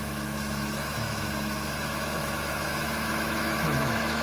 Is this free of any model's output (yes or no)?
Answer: no